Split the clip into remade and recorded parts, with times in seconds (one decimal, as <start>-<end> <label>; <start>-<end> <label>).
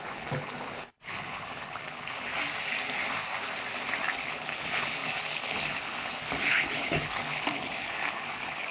0.0-2.3 remade; 2.3-4.1 recorded; 4.1-8.7 remade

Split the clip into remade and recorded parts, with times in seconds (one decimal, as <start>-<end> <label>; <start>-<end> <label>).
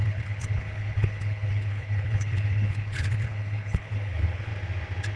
0.0-4.5 remade; 4.5-5.2 recorded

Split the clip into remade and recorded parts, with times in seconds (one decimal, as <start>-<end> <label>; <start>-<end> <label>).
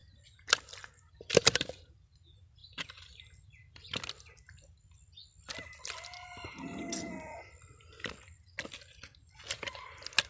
0.0-10.3 recorded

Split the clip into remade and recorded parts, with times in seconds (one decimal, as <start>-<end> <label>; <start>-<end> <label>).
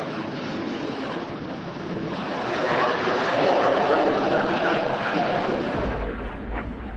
0.0-5.4 remade; 5.4-6.4 recorded; 6.4-7.0 remade